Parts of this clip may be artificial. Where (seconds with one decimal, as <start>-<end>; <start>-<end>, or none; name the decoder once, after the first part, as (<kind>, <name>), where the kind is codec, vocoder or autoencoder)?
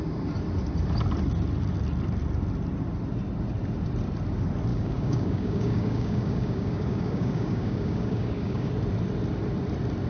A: 4.7-8.7 (codec, DAC)